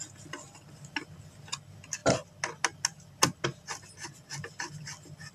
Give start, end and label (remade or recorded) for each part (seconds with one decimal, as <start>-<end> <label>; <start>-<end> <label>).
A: 0.0-5.3 recorded

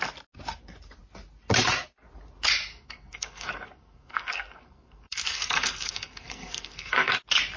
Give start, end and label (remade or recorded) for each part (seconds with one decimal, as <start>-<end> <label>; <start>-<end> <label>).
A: 0.0-2.7 recorded; 2.7-7.1 remade; 7.1-7.6 recorded